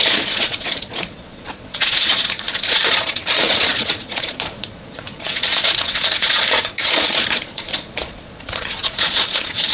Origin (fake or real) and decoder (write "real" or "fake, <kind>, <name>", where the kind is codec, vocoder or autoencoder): fake, vocoder, Vocos